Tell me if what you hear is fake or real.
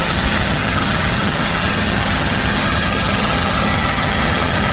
fake